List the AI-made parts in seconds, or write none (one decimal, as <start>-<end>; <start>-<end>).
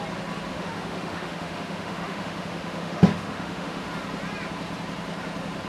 0.5-3.9